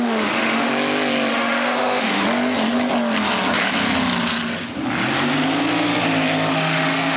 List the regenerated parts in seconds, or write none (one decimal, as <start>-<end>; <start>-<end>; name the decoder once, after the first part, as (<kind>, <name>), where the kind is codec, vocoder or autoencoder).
0.0-0.7 (autoencoder, DAC-VAE); 1.3-2.2; 6.5-7.2